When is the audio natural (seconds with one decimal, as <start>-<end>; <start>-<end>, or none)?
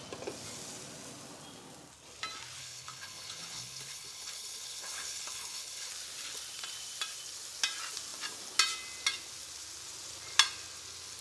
0.0-2.6; 5.9-11.2